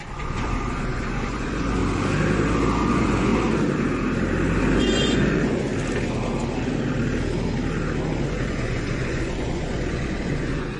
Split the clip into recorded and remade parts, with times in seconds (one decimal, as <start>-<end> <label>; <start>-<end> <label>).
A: 0.0-1.8 remade; 1.8-2.9 recorded; 2.9-3.3 remade; 3.3-4.8 recorded; 4.8-5.7 remade; 5.7-8.2 recorded; 8.2-10.8 remade